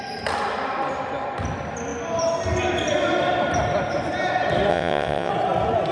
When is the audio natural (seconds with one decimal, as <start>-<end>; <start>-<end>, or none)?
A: 0.0-4.7; 5.3-5.9